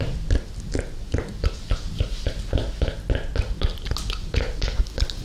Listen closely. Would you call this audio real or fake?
real